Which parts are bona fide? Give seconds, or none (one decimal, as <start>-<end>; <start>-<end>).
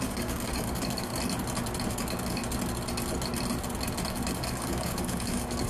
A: 1.1-1.9; 2.4-4.1